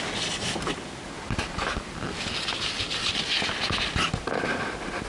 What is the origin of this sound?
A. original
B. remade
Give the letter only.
A